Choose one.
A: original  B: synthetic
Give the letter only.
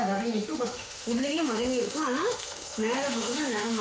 B